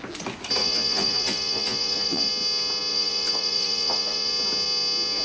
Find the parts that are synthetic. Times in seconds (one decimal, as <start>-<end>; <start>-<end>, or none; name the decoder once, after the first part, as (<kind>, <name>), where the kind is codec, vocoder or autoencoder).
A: 0.6-2.3 (vocoder, Vocos); 2.9-4.3